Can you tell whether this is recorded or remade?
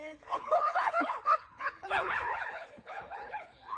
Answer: remade